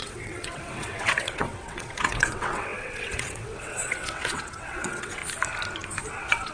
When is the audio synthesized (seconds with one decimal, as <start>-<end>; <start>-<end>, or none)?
0.0-5.2; 6.1-6.5